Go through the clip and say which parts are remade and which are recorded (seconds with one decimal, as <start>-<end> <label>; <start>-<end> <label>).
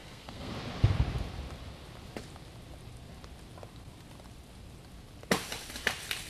0.0-0.5 remade; 0.5-6.3 recorded